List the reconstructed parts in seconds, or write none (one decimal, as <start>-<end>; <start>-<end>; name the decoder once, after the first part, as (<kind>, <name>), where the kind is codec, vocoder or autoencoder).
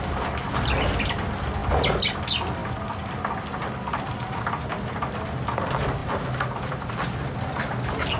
2.6-5.0 (vocoder, BigVGAN v2); 6.0-6.9